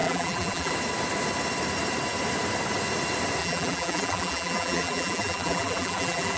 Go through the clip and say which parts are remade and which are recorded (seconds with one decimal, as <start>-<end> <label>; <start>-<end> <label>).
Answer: 0.0-0.7 remade; 0.7-3.4 recorded; 3.4-6.4 remade